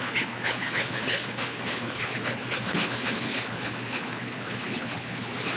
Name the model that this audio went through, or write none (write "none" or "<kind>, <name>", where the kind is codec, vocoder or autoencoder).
codec, HILCodec